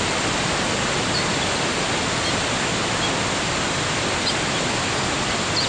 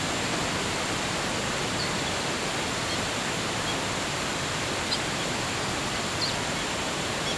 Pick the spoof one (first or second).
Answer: second